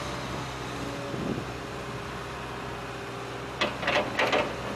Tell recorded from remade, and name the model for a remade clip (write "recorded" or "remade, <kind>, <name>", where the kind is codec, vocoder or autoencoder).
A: recorded